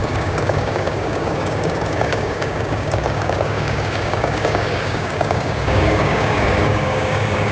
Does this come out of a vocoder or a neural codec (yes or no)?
yes